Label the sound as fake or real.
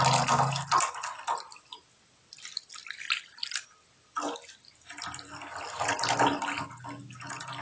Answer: real